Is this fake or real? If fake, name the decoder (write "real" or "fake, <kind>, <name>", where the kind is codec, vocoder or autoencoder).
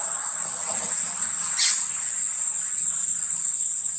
real